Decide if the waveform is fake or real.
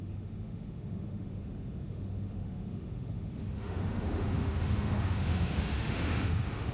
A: fake